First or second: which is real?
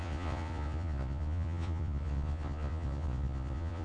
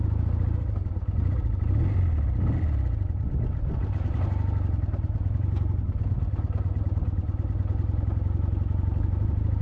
second